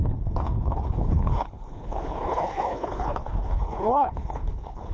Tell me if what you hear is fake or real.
fake